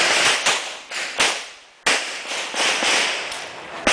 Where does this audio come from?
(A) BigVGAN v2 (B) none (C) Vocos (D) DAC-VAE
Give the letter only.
B